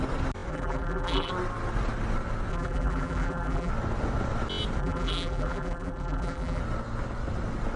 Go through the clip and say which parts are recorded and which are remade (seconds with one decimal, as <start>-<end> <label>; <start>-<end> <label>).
0.0-0.5 recorded; 0.5-1.3 remade; 1.3-2.5 recorded; 2.5-3.7 remade; 3.7-4.8 recorded; 4.8-6.6 remade; 6.6-7.8 recorded